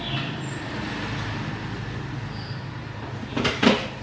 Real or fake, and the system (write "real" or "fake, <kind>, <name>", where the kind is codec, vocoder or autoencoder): real